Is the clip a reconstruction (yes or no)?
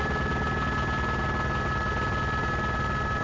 no